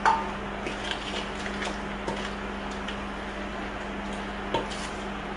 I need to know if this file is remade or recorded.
recorded